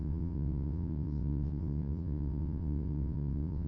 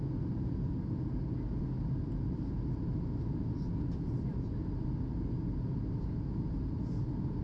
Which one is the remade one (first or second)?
first